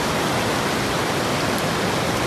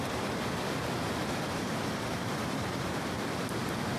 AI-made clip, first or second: second